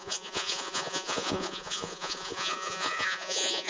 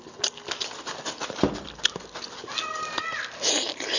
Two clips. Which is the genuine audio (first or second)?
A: second